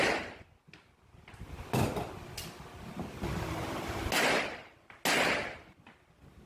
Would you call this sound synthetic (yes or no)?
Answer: no